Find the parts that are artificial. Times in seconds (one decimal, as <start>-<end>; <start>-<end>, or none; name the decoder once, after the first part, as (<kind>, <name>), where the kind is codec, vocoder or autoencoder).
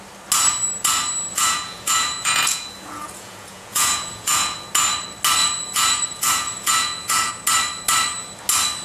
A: 1.3-4.7 (vocoder, Vocos); 5.4-7.3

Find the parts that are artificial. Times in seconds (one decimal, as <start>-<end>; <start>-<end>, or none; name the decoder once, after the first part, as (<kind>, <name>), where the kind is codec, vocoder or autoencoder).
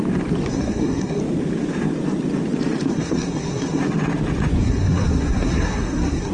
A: 0.5-1.2 (codec, SNAC); 2.9-3.8; 4.6-6.3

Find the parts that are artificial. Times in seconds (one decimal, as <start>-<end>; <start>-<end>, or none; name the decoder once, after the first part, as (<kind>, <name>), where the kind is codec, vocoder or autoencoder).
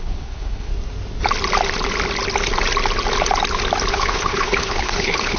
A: 0.0-0.7 (codec, HILCodec); 3.9-5.4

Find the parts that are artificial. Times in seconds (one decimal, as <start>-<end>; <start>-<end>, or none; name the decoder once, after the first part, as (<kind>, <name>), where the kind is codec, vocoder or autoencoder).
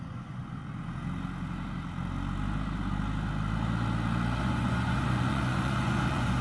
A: 0.0-0.6 (vocoder, Vocos); 4.4-6.4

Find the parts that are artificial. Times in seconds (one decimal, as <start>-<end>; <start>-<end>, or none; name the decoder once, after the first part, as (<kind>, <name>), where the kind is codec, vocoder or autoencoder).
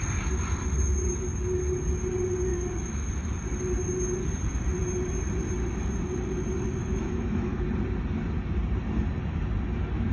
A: 2.5-3.1 (autoencoder, DAC-VAE); 6.8-7.6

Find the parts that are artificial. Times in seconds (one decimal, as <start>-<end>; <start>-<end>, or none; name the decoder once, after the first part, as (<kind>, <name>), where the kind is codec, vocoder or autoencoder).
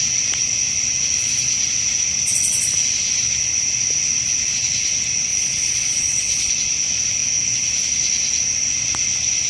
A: 5.3-6.5 (vocoder, Vocos)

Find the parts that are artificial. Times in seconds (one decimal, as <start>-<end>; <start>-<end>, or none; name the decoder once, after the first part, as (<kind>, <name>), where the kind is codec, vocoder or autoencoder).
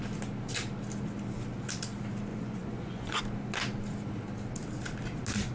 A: 2.3-3.2 (vocoder, Vocos)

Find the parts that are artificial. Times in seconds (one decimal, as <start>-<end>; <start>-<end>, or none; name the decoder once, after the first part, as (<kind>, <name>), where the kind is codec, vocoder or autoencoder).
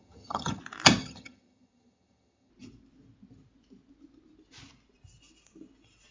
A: 0.0-0.6 (vocoder, HiFi-GAN); 1.0-2.5